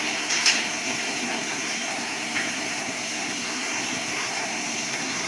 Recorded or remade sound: remade